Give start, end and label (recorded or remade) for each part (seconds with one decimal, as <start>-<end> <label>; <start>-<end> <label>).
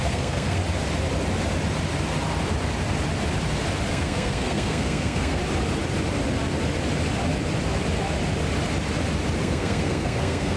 0.0-0.6 remade; 0.6-3.9 recorded; 3.9-5.4 remade; 5.4-9.4 recorded; 9.4-10.6 remade